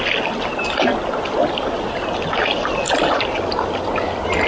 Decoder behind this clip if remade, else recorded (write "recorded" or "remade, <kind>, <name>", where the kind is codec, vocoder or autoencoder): recorded